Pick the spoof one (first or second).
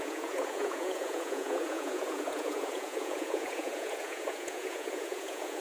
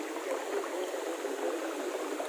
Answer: first